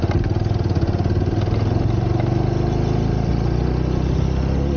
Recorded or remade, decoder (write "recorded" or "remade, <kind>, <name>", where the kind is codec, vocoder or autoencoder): recorded